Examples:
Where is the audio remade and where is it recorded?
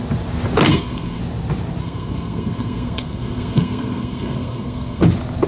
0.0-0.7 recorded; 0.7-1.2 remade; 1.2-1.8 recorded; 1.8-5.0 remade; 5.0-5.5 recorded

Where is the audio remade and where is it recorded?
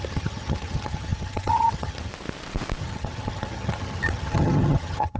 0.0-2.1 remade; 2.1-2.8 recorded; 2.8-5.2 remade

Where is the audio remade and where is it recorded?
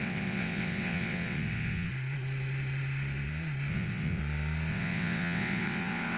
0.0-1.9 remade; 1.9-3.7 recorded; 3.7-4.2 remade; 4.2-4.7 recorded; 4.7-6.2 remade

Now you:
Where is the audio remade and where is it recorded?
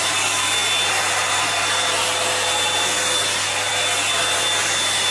0.0-5.1 recorded